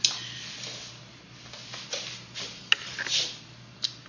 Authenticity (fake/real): real